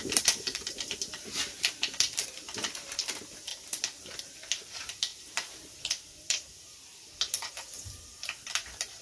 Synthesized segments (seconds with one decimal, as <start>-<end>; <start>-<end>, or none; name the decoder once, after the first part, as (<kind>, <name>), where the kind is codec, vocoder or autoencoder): 0.0-3.5 (vocoder, BigVGAN v2); 4.2-9.0